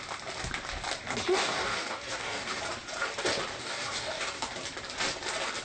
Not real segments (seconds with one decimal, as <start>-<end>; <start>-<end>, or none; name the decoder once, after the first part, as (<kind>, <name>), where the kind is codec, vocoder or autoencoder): 1.4-2.6 (codec, DAC); 3.6-4.4